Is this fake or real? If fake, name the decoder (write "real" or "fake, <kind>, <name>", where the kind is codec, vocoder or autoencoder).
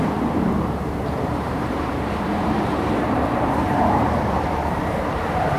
fake, vocoder, BigVGAN v2